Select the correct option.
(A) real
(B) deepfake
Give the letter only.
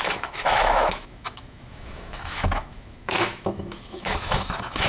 B